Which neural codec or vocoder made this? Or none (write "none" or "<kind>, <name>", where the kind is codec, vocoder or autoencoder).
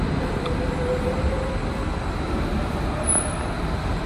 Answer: none